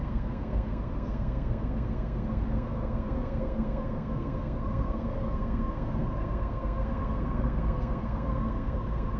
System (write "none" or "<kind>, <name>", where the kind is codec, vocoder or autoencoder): codec, SNAC